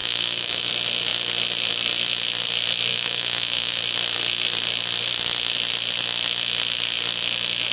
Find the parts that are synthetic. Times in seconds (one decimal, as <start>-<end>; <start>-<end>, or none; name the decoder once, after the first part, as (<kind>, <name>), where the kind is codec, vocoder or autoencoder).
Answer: 0.0-0.7 (codec, DAC); 2.9-3.8